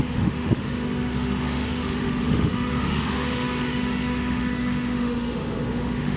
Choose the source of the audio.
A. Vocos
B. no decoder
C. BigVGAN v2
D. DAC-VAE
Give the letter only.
D